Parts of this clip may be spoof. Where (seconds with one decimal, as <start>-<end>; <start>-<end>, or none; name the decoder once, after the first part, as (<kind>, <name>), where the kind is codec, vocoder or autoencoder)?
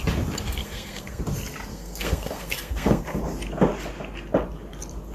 0.6-1.2 (codec, SNAC); 1.7-3.2